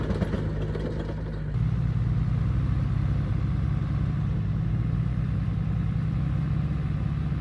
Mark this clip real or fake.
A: real